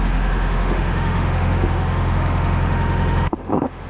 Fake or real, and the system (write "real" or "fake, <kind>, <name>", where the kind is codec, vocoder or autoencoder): fake, autoencoder, DAC-VAE